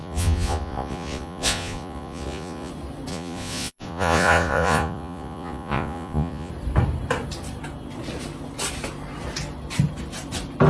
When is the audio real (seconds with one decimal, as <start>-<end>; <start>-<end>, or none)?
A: 2.7-3.1; 6.5-10.7